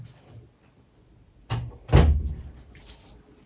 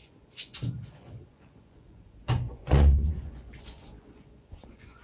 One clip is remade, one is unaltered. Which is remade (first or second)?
second